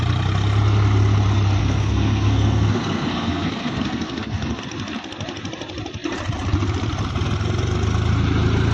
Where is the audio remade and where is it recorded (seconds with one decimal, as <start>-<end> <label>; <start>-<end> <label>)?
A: 0.0-1.6 recorded; 1.6-4.6 remade; 4.6-8.7 recorded